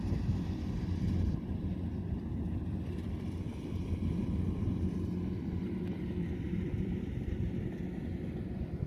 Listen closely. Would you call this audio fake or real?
fake